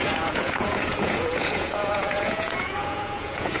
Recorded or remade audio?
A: remade